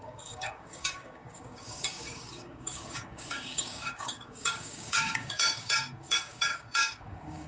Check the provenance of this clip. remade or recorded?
remade